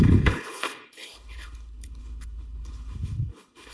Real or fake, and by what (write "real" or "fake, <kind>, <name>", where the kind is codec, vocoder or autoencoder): fake, codec, HILCodec